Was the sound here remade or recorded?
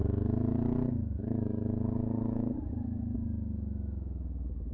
remade